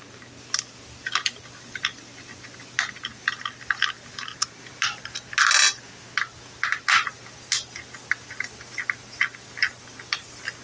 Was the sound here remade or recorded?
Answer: recorded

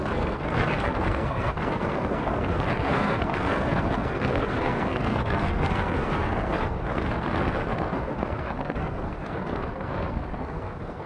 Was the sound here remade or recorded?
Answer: remade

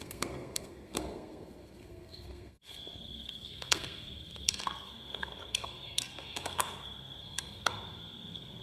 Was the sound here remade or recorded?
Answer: remade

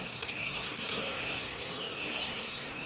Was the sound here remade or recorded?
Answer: remade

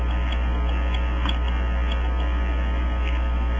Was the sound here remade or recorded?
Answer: recorded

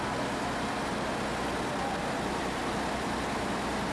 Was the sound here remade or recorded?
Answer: recorded